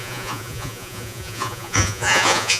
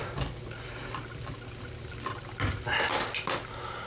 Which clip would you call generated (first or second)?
first